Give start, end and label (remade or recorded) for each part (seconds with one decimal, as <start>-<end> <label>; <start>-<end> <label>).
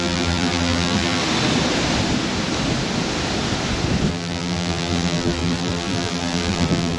0.0-1.2 remade; 1.2-4.1 recorded; 4.1-7.0 remade